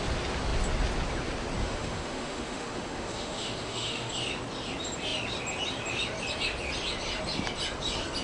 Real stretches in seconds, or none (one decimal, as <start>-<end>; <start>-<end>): 0.0-1.6; 4.1-8.2